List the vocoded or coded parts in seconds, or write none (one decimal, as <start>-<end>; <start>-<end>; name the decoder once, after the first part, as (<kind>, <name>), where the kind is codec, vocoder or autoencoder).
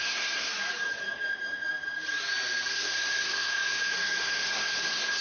0.0-0.5 (codec, SNAC); 2.7-5.2